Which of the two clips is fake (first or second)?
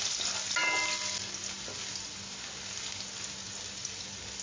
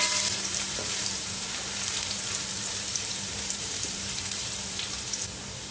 second